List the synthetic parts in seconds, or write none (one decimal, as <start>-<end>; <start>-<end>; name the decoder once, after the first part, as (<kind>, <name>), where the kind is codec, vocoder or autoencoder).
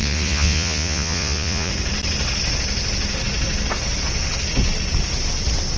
0.0-1.7 (vocoder, Vocos)